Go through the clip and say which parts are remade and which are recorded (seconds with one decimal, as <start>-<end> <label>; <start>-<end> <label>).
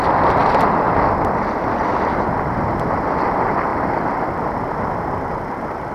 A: 0.0-5.9 recorded